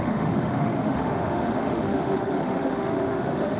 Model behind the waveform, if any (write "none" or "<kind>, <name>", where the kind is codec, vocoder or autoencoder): autoencoder, DAC-VAE